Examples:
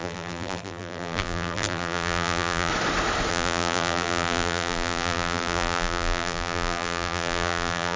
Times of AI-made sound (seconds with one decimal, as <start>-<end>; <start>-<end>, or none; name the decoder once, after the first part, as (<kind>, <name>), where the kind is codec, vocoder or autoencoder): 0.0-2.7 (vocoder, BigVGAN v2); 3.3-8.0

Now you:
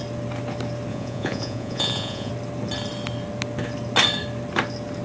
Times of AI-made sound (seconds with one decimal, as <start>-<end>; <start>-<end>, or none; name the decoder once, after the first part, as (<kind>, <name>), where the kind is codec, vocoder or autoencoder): 0.9-2.3 (vocoder, Vocos)

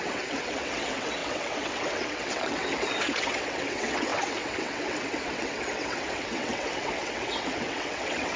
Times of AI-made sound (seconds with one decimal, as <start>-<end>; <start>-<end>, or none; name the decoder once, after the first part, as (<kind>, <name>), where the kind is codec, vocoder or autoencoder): 0.0-8.4 (vocoder, WaveNeXt)